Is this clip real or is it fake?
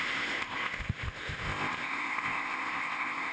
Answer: fake